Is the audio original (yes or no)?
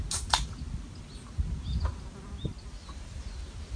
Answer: yes